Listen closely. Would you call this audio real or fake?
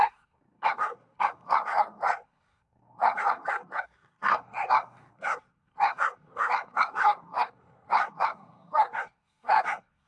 fake